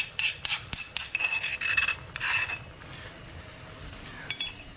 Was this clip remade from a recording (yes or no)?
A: no